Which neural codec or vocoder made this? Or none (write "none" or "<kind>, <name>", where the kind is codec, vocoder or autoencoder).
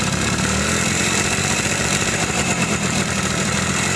vocoder, BigVGAN v2